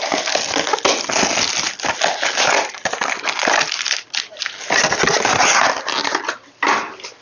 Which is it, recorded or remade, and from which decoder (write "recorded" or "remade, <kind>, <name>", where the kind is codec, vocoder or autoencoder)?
recorded